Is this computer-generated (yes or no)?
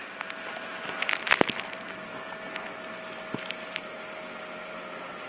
no